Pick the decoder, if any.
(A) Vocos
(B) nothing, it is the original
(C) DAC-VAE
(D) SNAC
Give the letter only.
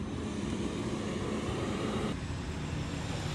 B